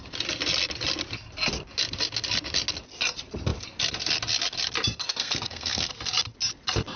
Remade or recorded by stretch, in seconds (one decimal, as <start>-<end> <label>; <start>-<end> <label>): 0.0-5.0 recorded; 5.0-5.9 remade; 5.9-7.0 recorded